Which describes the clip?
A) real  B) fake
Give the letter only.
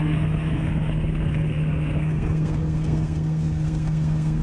B